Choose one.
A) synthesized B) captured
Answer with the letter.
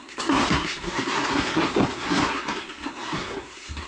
A